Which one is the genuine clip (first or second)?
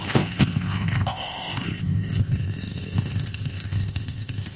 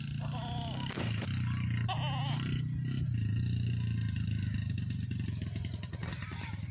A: second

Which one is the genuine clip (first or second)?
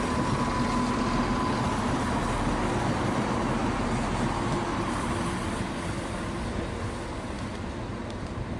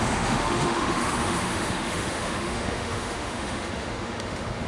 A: first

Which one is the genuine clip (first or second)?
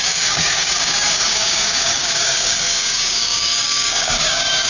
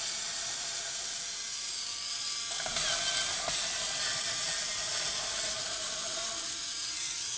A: second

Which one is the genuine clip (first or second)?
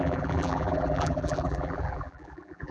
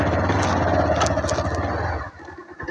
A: second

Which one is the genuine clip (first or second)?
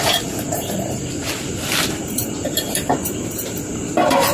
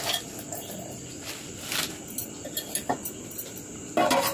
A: second